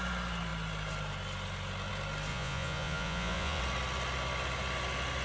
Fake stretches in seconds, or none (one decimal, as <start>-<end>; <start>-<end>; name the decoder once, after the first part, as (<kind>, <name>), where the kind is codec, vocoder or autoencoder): 2.3-3.6 (vocoder, Vocos)